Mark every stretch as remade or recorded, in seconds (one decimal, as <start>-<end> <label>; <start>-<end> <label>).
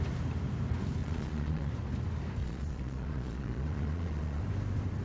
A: 0.0-1.0 recorded; 1.0-1.7 remade; 1.7-2.4 recorded; 2.4-4.4 remade; 4.4-5.0 recorded